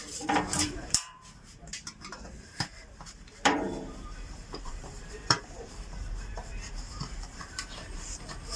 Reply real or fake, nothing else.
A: fake